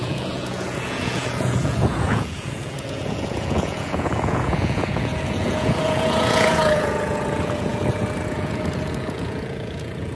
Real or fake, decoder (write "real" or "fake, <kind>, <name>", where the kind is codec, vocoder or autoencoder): fake, vocoder, Vocos